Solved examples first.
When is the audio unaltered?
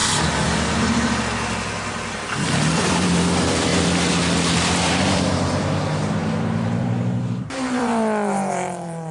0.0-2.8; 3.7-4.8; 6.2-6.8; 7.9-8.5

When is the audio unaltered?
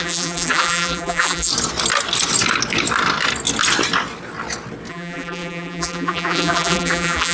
1.5-4.9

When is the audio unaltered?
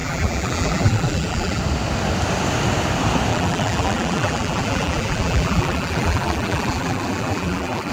1.6-3.3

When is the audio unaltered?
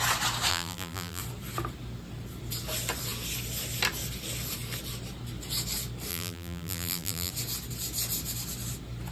0.0-0.5; 1.2-6.1; 7.3-9.1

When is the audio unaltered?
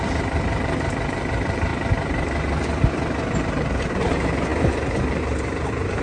1.7-3.4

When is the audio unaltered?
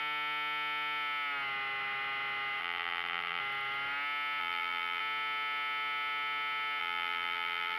0.0-2.6; 3.4-4.4; 5.0-6.8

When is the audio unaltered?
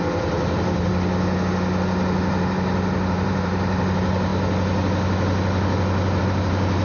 0.9-2.3; 4.3-6.2